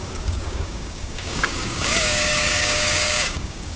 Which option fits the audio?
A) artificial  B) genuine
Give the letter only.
A